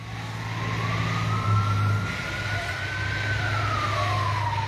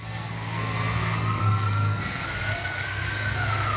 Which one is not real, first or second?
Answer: second